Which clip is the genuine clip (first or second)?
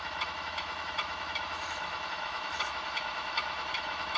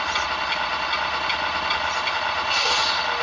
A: second